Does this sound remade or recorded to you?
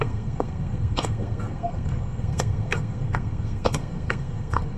remade